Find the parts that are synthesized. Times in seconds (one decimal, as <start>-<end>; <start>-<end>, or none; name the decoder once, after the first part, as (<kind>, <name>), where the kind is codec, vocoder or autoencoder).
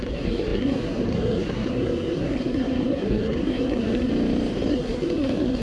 0.0-4.1 (codec, SNAC); 4.7-5.6